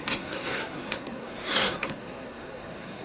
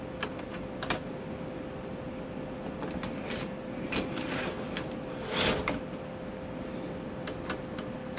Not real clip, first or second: first